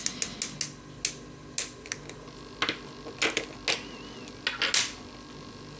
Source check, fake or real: real